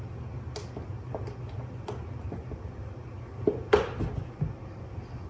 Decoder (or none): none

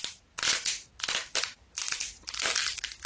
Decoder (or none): none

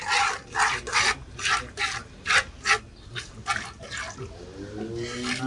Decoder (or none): none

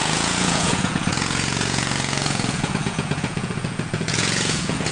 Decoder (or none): vocoder, Vocos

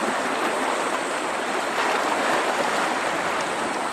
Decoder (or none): none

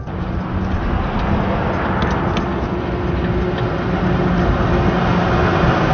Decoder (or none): none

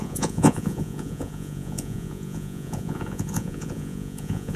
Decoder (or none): vocoder, Vocos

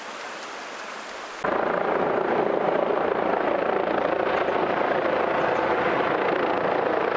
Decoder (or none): none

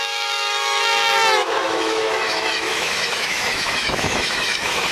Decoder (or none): autoencoder, DAC-VAE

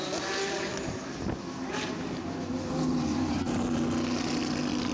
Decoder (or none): none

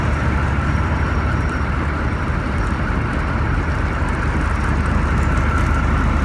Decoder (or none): none